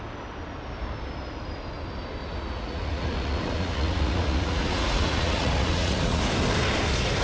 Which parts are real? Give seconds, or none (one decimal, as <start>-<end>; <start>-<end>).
0.0-2.2; 6.2-7.2